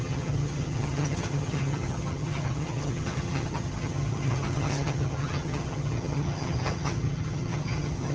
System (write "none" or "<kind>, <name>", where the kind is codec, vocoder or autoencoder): vocoder, HiFi-GAN